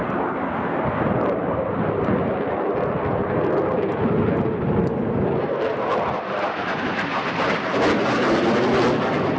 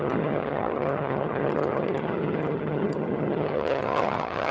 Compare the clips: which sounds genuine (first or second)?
first